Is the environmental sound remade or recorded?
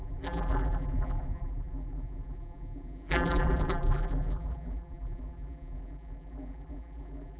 remade